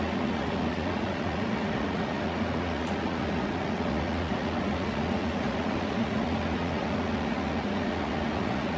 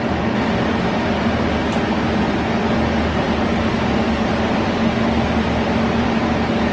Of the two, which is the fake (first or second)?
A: first